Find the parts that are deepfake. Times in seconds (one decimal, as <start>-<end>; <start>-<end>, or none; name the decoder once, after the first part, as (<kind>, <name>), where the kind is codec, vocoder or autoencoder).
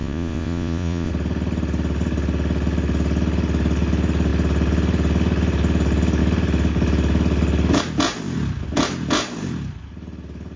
0.0-1.1 (vocoder, Vocos)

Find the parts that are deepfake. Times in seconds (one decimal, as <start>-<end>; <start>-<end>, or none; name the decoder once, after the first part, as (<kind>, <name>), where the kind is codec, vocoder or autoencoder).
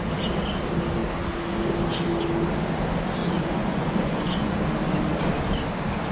3.2-4.6 (vocoder, Vocos)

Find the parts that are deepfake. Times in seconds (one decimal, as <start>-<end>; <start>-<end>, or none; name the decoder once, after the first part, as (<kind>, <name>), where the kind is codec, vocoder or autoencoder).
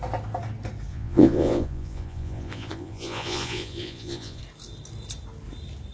0.9-4.4 (vocoder, Vocos)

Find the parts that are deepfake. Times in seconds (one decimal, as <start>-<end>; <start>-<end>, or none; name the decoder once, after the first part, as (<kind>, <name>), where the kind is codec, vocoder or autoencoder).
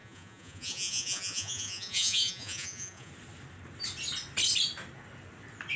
0.0-3.1 (vocoder, Vocos)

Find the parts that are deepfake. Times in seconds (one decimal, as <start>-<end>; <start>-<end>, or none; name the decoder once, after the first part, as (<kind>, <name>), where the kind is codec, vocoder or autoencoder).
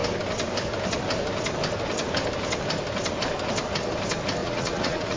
4.4-5.2 (vocoder, Vocos)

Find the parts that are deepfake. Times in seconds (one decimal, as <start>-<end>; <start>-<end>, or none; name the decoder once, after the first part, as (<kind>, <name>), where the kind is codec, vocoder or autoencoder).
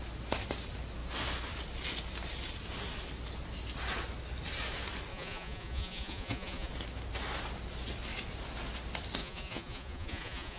5.1-6.7 (vocoder, Vocos); 9.2-10.6